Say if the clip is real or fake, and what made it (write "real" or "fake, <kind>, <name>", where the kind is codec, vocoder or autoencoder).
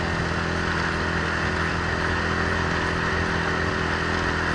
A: real